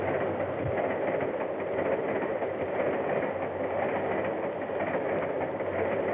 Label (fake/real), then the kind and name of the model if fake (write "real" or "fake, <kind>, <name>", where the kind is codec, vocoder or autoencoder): real